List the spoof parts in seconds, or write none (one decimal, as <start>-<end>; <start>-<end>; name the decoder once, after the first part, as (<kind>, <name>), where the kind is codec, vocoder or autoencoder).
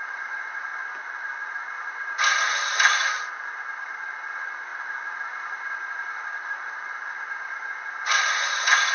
0.0-0.7 (vocoder, Vocos); 4.3-4.7; 5.7-8.9